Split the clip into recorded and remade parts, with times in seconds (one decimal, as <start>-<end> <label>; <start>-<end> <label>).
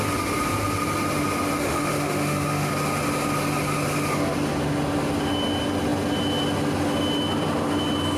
0.0-1.6 recorded; 1.6-2.7 remade; 2.7-8.2 recorded